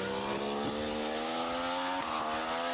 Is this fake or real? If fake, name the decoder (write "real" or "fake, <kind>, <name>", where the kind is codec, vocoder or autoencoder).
real